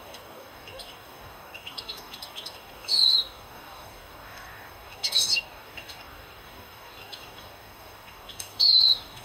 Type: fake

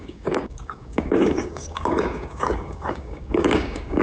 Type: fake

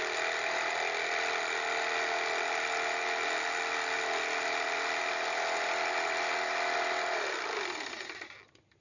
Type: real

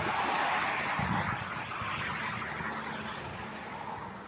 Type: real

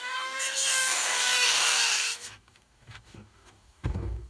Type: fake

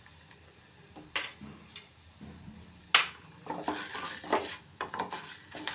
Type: real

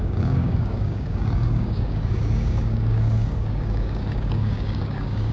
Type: fake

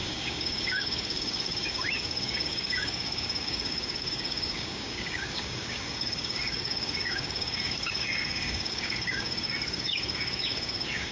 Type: fake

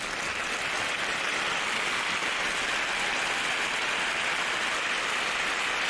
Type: real